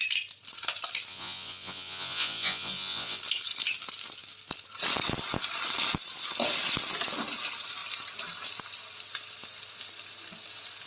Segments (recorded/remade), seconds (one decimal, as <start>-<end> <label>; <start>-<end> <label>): 0.0-1.1 recorded; 1.1-3.2 remade; 3.2-10.9 recorded